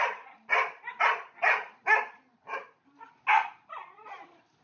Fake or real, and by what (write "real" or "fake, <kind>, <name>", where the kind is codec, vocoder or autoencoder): real